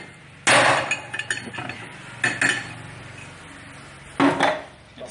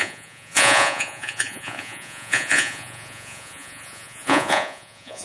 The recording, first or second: first